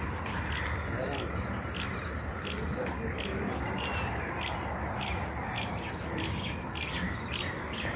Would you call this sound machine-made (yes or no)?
no